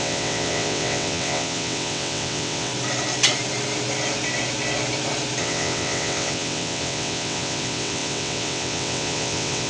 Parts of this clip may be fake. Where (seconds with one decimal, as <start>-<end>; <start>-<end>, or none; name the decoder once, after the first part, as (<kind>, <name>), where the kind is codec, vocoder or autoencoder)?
0.0-2.7 (vocoder, WaveNeXt); 5.4-9.7